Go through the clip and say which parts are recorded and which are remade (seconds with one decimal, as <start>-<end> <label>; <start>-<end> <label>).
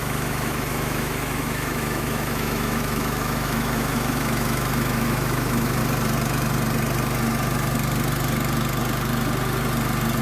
0.0-5.8 remade; 5.8-10.2 recorded